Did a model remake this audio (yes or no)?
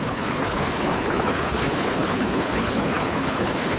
yes